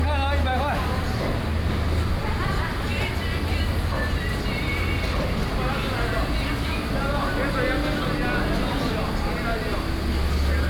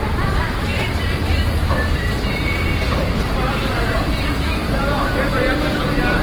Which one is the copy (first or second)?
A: second